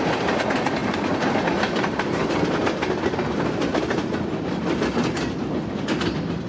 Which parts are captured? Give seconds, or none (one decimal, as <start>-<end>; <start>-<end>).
0.0-6.5